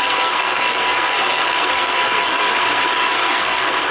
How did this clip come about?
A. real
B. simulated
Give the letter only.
B